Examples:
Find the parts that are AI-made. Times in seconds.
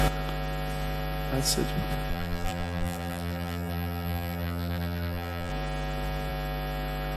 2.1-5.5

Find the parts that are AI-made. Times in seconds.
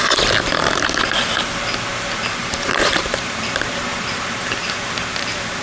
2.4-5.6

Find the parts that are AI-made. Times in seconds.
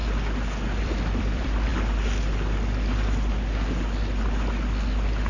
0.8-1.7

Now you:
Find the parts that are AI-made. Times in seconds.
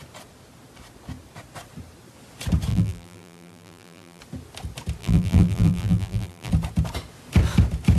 2.7-4.2; 5.0-6.5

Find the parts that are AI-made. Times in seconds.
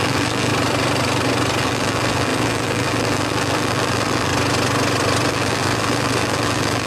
0.0-0.5; 1.6-4.3; 5.3-6.9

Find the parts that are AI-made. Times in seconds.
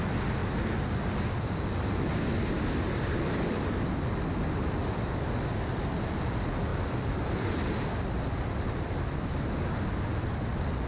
6.7-8.9